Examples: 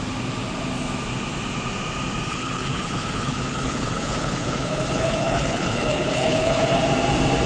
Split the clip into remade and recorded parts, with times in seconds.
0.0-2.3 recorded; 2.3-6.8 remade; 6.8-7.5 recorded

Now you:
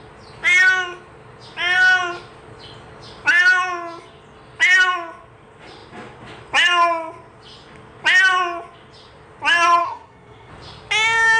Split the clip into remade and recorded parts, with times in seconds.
0.0-9.8 recorded; 9.8-10.5 remade; 10.5-11.4 recorded

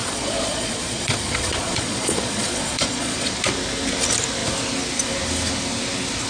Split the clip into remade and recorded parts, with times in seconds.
0.0-3.3 remade; 3.3-6.3 recorded

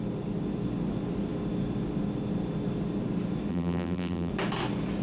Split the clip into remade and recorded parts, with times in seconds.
0.0-3.5 recorded; 3.5-4.3 remade; 4.3-5.0 recorded

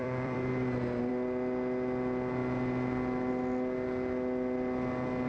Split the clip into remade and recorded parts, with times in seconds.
0.0-1.1 remade; 1.1-5.3 recorded

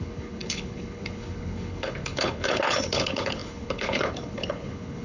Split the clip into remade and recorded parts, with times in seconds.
0.0-5.0 remade

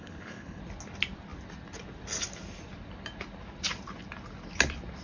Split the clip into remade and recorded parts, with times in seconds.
0.0-0.6 remade; 0.6-5.0 recorded